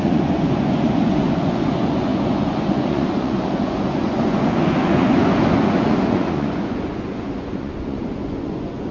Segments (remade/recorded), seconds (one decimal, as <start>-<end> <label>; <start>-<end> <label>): 0.0-8.9 remade